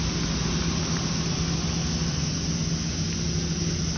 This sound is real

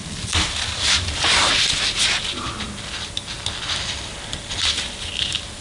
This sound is real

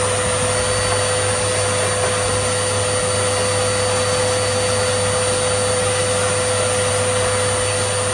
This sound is real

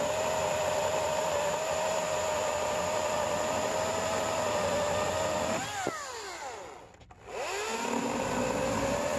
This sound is real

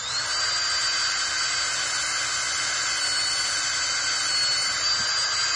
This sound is real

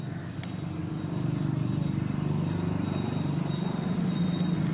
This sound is real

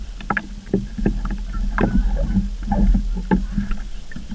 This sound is real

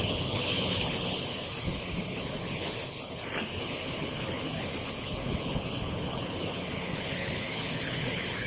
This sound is fake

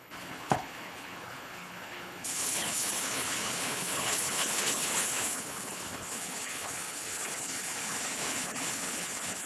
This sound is fake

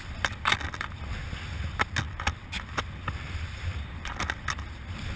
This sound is real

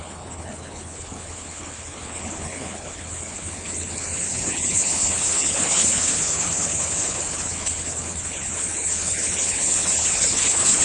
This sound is fake